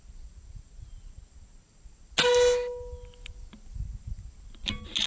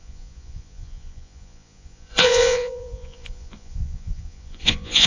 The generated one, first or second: second